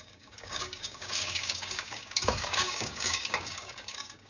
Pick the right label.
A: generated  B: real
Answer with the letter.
A